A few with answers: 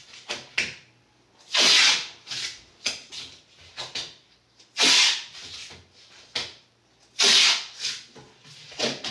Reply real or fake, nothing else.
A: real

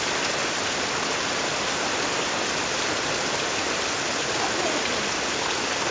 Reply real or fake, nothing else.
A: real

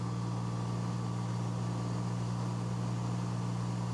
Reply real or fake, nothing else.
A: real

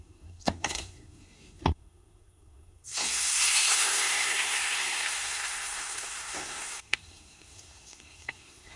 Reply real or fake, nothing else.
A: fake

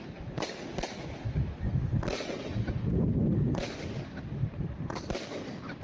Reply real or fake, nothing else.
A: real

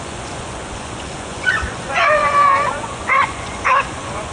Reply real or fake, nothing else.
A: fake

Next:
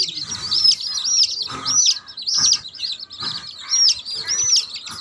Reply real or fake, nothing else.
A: real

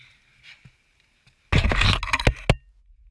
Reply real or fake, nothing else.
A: real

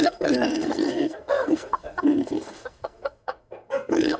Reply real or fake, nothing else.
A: fake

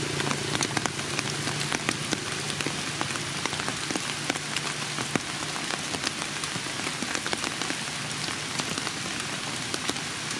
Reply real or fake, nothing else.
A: real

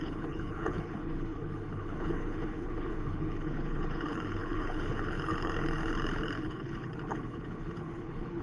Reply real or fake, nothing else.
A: fake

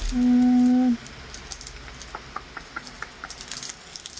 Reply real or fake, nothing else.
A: real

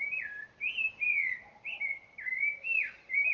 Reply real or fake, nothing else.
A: real